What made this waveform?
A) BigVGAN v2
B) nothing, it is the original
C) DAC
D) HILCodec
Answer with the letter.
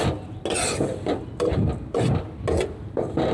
B